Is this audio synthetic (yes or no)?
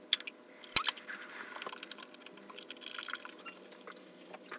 no